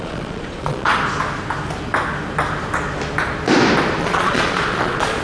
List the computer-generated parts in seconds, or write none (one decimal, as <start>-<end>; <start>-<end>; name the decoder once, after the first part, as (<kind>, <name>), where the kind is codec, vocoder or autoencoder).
0.0-0.9 (vocoder, Vocos); 4.0-5.2